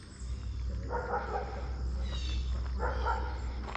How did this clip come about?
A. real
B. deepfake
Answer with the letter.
A